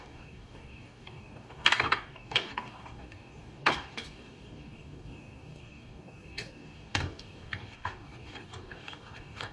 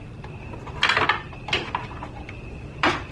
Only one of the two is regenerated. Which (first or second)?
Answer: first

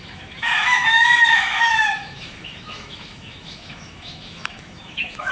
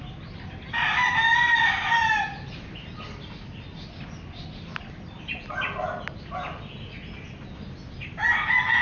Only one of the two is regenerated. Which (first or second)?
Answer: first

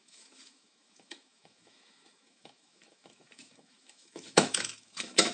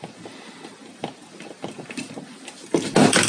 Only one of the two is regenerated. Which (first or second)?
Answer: first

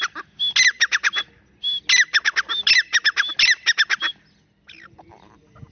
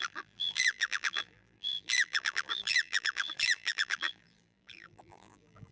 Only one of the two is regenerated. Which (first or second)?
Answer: second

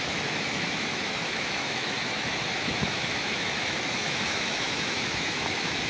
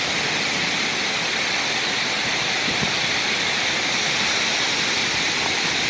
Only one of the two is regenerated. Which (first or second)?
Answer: first